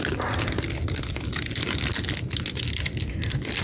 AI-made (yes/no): no